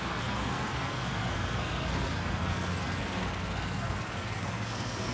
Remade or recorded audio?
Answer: remade